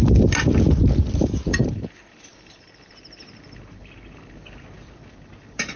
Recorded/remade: recorded